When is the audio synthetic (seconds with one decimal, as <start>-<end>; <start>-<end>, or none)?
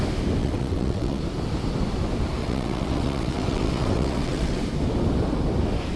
0.4-1.2; 2.4-4.6